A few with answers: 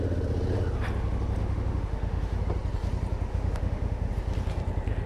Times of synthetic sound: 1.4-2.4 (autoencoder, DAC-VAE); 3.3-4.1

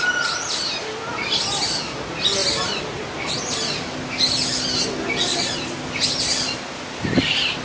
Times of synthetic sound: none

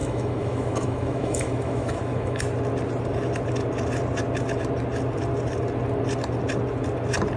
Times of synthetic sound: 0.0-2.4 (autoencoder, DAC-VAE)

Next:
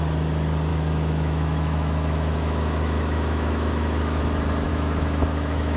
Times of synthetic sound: 0.7-4.2 (autoencoder, DAC-VAE); 4.7-5.8

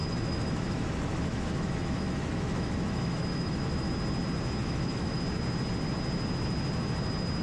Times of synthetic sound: 0.0-3.9 (autoencoder, DAC-VAE); 4.6-5.2

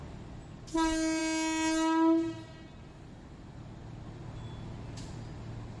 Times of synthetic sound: none

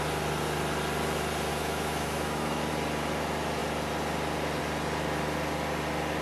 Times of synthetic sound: 1.5-2.7 (autoencoder, DAC-VAE)